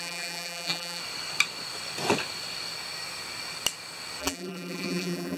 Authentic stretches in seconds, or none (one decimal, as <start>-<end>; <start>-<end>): 1.0-4.2